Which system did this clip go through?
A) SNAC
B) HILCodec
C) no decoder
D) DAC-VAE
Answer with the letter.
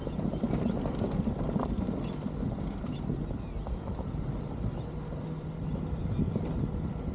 C